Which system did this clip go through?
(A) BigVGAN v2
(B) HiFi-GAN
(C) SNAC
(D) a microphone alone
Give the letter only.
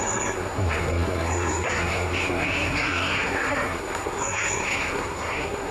C